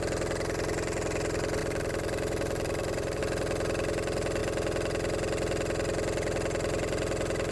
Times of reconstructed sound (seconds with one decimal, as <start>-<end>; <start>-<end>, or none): 1.6-3.2